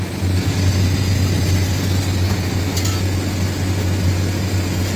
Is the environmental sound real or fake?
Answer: real